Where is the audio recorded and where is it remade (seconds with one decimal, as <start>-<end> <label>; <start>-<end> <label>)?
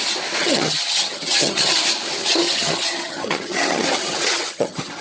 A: 0.0-0.4 recorded; 0.4-1.8 remade; 1.8-2.2 recorded; 2.2-5.0 remade